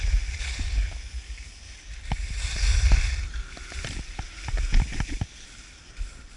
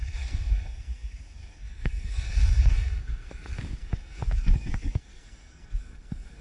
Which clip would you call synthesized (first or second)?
second